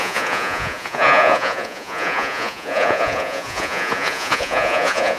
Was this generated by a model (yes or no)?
yes